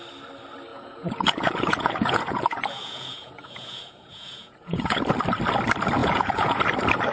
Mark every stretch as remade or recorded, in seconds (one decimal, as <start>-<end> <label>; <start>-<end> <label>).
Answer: 0.0-0.7 recorded; 0.7-5.0 remade; 5.0-6.0 recorded; 6.0-6.6 remade; 6.6-7.1 recorded